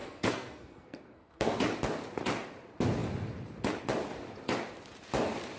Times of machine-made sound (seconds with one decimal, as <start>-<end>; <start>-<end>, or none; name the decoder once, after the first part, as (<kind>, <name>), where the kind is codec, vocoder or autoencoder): 0.0-1.6 (codec, SNAC)